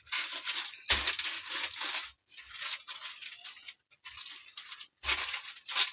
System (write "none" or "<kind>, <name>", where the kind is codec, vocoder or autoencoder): none